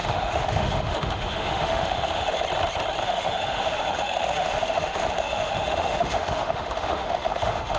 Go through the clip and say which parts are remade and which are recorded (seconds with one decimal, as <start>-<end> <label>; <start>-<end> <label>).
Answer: 0.0-2.4 remade; 2.4-3.0 recorded; 3.0-7.8 remade